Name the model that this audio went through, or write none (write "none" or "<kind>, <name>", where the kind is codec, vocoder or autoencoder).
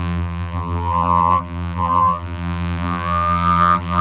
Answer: vocoder, BigVGAN v2